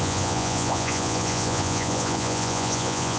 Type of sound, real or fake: fake